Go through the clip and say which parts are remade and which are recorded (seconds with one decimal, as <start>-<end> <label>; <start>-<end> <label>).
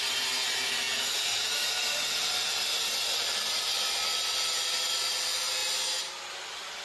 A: 0.0-6.8 recorded